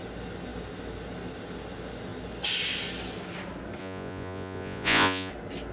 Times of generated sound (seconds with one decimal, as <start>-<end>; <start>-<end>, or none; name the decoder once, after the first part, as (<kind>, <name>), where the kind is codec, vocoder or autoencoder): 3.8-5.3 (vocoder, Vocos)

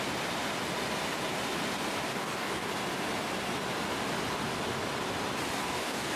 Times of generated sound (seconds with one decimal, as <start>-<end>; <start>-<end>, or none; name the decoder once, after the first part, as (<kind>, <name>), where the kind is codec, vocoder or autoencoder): 2.1-2.7 (codec, DAC); 5.6-6.2

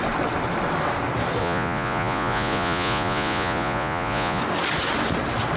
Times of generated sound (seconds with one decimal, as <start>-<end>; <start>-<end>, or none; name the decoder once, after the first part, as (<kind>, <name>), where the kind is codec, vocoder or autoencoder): 1.4-4.4 (vocoder, Vocos)

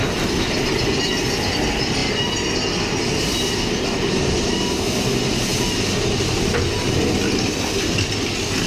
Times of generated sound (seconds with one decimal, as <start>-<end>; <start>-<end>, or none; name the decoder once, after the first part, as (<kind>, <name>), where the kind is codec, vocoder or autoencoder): none

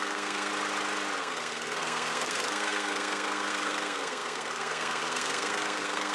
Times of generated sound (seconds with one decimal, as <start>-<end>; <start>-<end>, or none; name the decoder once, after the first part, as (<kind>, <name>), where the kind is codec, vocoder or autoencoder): 0.0-0.5 (codec, SNAC); 1.2-6.1

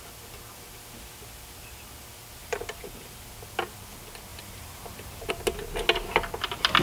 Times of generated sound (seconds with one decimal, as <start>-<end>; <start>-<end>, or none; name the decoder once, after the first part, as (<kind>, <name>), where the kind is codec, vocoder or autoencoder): 2.4-3.2 (vocoder, BigVGAN v2); 4.3-5.3